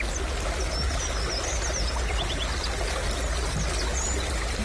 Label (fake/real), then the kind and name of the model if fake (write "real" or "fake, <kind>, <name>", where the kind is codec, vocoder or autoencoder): real